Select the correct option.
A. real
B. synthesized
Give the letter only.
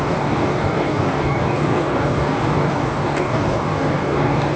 B